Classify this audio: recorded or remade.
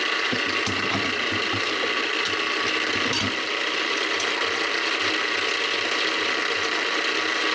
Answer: recorded